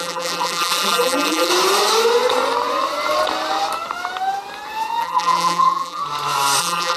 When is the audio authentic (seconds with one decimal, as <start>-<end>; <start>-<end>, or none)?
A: 1.5-5.0; 6.0-6.6